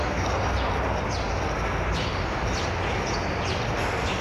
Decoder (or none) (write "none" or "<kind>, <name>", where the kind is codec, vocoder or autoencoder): none